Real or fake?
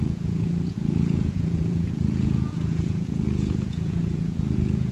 fake